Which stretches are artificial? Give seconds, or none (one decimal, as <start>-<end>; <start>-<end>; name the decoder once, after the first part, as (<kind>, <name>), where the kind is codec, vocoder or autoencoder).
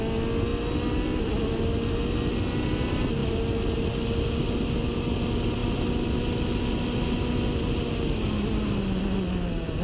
none